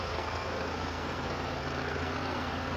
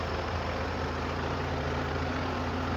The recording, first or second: second